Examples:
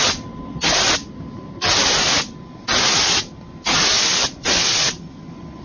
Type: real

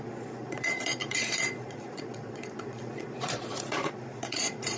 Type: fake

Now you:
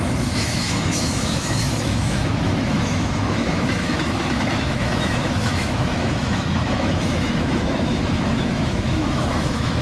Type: fake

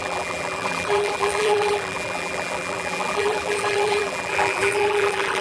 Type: fake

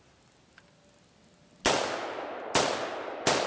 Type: real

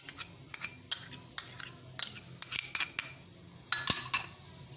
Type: real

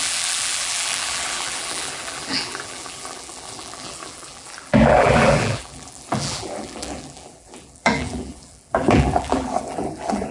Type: fake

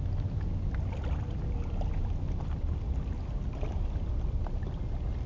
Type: real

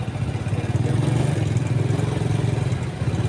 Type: real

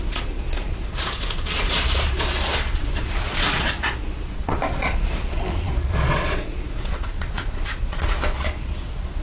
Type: fake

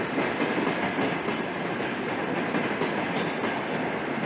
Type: real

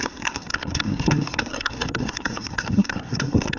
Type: fake